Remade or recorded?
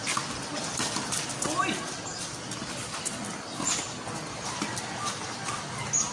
recorded